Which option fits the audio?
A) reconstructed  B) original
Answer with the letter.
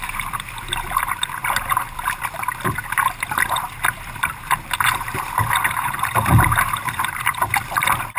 A